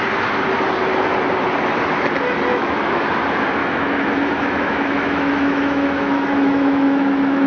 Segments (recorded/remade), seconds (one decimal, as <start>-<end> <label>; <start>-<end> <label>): 0.0-2.5 recorded; 2.5-3.1 remade; 3.1-3.6 recorded; 3.6-7.5 remade